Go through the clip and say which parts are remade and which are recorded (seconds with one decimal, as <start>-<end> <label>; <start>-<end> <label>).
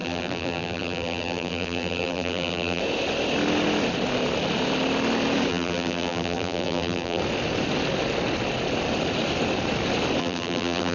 0.0-2.8 remade; 2.8-5.5 recorded; 5.5-7.2 remade; 7.2-10.2 recorded; 10.2-10.9 remade